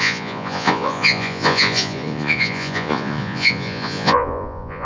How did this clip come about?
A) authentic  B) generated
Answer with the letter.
B